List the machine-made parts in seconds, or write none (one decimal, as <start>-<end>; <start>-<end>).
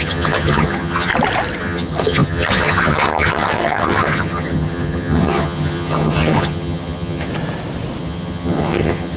0.0-1.1; 1.6-7.3; 8.0-9.2